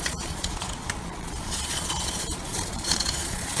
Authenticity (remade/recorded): remade